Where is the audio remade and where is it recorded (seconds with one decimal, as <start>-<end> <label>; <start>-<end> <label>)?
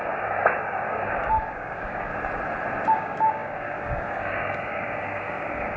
0.0-2.1 remade; 2.1-2.9 recorded; 2.9-5.8 remade